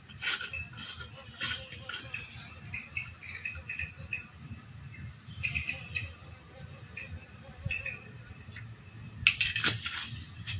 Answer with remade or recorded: recorded